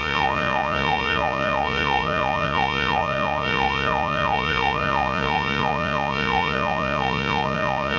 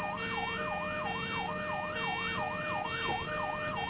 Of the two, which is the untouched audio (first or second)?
second